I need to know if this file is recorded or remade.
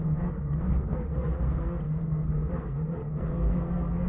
remade